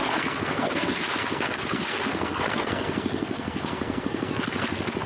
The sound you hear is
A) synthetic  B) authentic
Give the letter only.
A